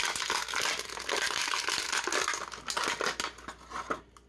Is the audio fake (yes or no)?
no